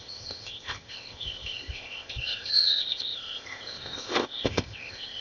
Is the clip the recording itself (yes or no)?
no